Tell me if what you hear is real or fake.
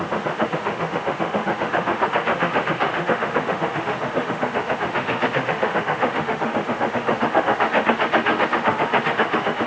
fake